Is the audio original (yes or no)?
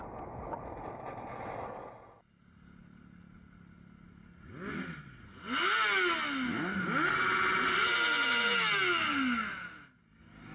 yes